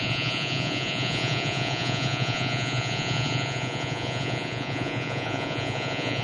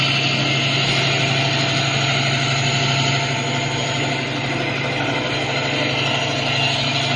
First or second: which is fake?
first